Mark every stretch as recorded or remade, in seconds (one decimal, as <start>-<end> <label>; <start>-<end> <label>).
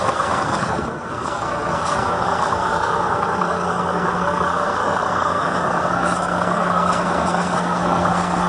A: 0.0-8.5 remade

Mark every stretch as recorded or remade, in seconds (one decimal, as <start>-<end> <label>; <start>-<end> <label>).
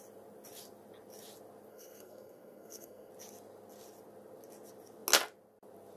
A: 0.0-1.7 recorded; 1.7-3.1 remade; 3.1-6.0 recorded